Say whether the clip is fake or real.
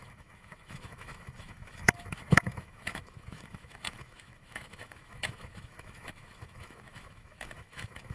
fake